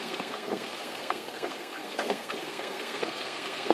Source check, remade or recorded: remade